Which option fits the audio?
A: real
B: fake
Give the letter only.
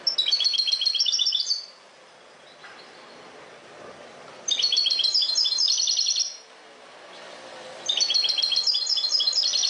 B